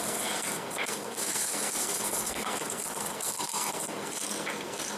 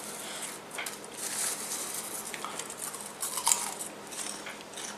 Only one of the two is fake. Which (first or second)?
first